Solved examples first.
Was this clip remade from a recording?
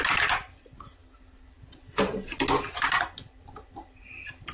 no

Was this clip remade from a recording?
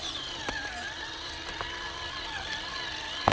no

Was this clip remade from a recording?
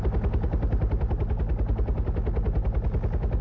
no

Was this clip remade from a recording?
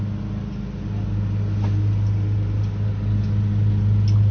no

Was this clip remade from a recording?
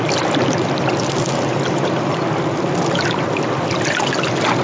no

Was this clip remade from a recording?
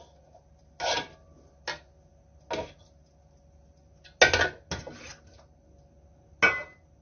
no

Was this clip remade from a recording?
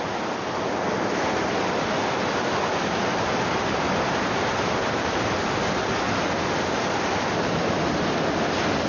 no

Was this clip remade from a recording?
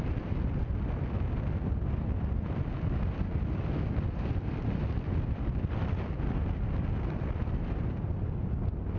no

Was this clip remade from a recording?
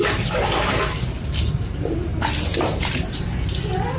no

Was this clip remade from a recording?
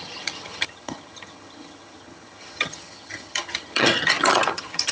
yes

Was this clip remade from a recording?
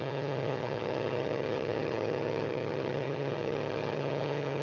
yes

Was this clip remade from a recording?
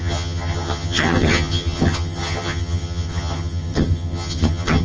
yes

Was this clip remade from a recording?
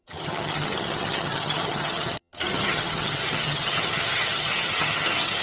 yes